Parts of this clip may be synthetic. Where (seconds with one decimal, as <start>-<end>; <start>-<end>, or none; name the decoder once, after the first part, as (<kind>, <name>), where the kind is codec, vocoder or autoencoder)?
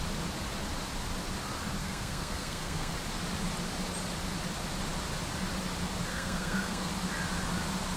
1.8-2.9 (codec, SNAC); 6.1-6.9